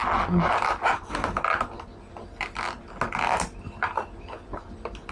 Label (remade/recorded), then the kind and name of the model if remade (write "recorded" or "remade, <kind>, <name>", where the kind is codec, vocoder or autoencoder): recorded